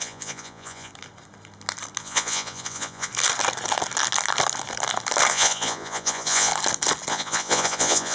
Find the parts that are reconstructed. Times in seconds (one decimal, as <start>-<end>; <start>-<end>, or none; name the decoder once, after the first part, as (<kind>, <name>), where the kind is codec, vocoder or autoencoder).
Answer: 0.0-0.9 (vocoder, Vocos); 2.0-3.1; 5.3-6.5; 7.1-8.1